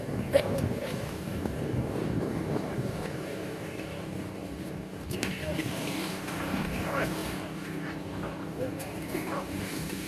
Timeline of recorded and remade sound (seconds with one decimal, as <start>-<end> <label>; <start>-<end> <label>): 0.0-10.1 remade